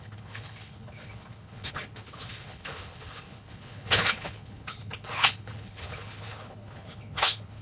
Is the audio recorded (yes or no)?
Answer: no